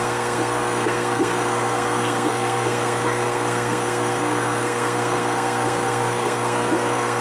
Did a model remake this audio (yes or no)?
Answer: yes